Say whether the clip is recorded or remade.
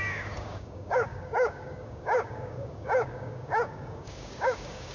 remade